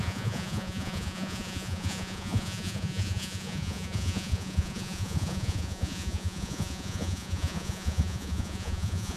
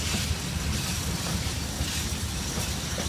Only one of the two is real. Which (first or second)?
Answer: second